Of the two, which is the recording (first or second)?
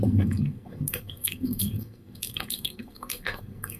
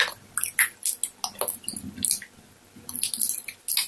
second